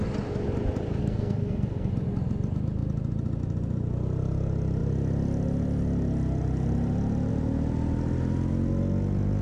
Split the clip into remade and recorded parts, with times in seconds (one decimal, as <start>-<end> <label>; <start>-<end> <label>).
0.0-1.0 recorded; 1.0-1.9 remade; 1.9-9.4 recorded